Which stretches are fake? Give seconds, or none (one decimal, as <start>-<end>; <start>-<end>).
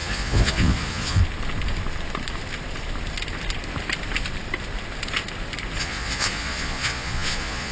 0.0-1.2; 5.8-7.7